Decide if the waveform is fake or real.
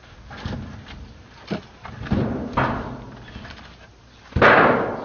real